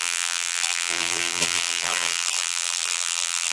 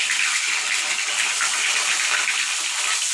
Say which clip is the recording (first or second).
second